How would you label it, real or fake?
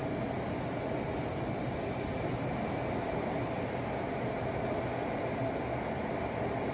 real